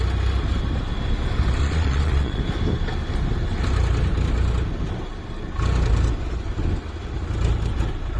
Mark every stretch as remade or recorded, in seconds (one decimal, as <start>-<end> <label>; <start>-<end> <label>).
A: 0.0-1.6 recorded; 1.6-2.4 remade; 2.4-8.2 recorded